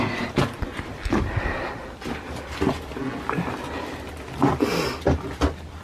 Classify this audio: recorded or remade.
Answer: recorded